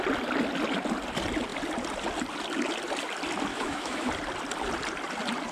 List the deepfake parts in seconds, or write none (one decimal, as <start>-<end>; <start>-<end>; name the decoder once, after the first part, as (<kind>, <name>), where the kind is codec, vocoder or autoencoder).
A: 3.5-4.1 (autoencoder, DAC-VAE)